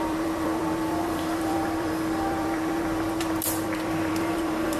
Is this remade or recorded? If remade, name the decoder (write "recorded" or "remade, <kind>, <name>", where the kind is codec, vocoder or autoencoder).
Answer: remade, vocoder, BigVGAN v2